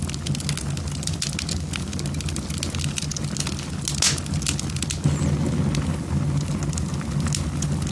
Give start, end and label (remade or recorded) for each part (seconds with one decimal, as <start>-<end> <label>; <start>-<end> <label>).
0.0-7.9 recorded